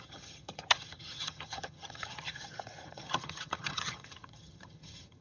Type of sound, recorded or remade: remade